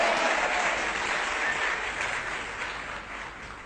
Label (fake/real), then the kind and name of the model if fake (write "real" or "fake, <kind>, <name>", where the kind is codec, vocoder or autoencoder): real